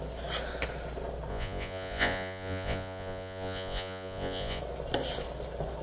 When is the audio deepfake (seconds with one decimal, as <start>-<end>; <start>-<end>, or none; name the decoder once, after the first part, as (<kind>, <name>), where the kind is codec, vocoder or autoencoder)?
1.3-4.6 (vocoder, Vocos)